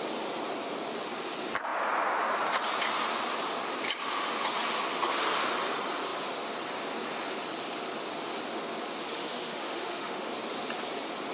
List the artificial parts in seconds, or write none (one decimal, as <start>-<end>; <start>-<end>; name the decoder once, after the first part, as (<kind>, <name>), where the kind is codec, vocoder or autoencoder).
9.1-10.3 (autoencoder, DAC-VAE)